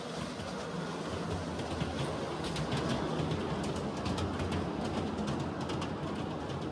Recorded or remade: recorded